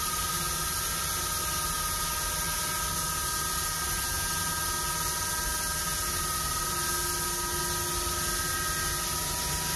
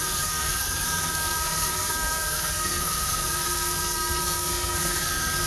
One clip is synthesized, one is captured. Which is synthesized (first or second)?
second